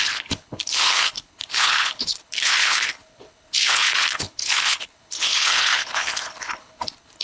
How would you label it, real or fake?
fake